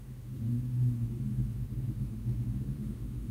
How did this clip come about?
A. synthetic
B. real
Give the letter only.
A